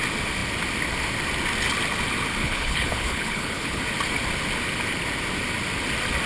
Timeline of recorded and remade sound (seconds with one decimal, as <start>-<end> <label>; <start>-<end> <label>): 0.0-2.4 recorded; 2.4-3.8 remade; 3.8-6.3 recorded